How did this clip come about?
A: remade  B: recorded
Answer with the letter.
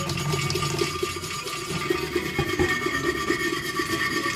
B